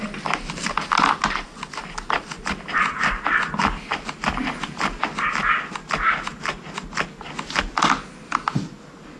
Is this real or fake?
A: real